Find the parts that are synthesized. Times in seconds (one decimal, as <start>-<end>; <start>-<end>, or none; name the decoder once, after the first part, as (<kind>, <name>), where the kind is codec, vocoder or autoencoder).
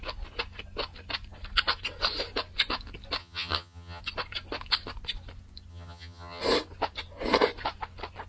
3.2-4.0 (vocoder, HiFi-GAN); 5.7-6.4